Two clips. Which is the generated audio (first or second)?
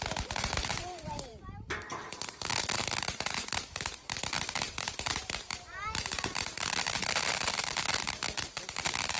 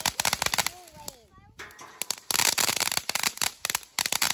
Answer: first